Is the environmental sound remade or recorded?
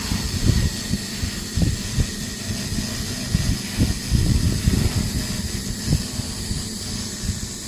recorded